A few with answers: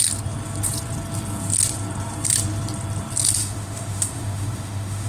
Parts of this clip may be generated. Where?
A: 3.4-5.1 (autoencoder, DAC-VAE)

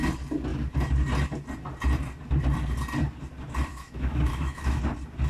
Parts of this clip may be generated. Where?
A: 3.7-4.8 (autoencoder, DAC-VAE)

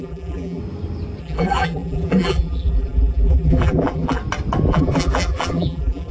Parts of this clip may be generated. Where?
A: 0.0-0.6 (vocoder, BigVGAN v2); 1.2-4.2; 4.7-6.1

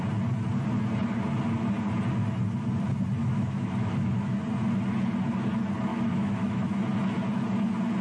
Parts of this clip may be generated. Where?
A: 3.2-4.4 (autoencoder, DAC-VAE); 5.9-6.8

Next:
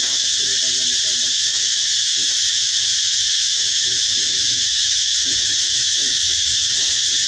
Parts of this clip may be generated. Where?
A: 0.0-0.5 (autoencoder, DAC-VAE); 1.3-7.3

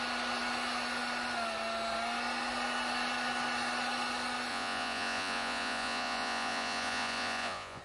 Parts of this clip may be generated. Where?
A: 4.5-7.8 (vocoder, Vocos)

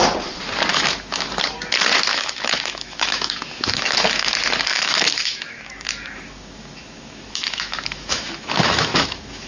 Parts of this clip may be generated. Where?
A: 0.7-1.3 (autoencoder, DAC-VAE); 2.1-4.3; 4.7-9.5